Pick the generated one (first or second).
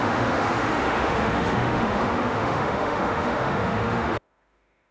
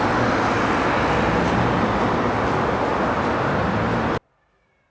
first